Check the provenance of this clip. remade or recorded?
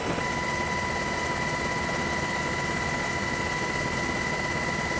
recorded